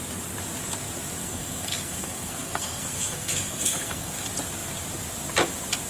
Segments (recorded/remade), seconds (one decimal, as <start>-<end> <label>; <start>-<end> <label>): 0.0-1.2 recorded; 1.2-4.1 remade; 4.1-5.9 recorded